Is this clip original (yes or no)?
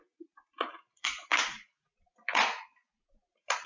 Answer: no